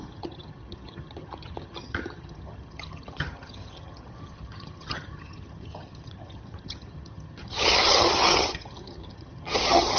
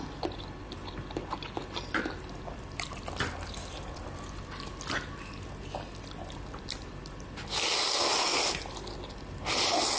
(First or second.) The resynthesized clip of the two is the first